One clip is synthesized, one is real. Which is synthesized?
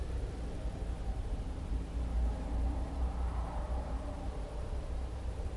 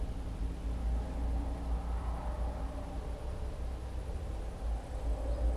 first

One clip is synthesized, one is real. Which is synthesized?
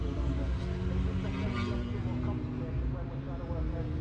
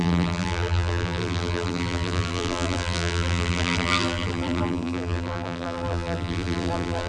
second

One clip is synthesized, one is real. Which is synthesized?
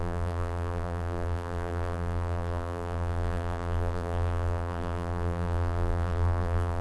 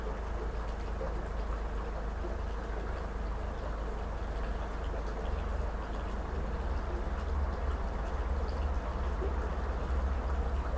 first